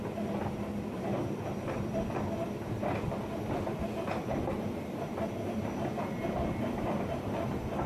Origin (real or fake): fake